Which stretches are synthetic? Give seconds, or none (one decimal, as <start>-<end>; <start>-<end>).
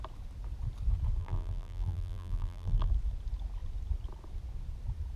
1.2-2.9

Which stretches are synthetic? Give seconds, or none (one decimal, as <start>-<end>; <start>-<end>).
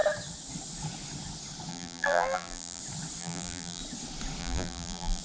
1.7-2.8; 3.2-3.8; 4.4-5.2